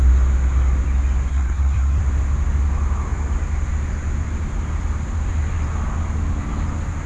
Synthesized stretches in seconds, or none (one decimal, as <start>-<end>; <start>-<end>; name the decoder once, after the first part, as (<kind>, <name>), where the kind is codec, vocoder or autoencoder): 1.3-2.0 (codec, SNAC)